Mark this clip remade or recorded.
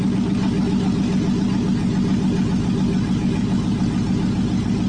recorded